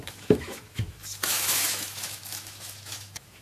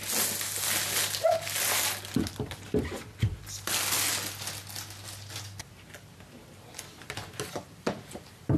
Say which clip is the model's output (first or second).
first